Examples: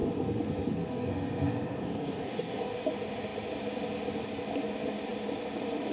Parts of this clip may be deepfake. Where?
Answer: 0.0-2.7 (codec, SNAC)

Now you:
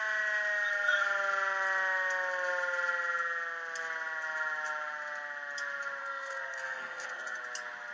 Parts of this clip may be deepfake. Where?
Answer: 6.0-7.4 (codec, SNAC)

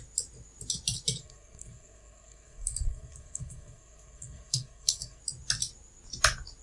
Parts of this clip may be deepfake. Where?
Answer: 1.2-5.2 (codec, SNAC)

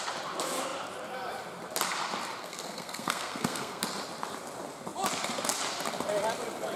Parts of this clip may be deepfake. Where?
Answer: 2.4-3.8 (codec, SNAC)

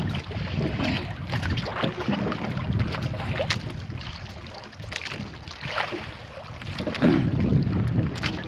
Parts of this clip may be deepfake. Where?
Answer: none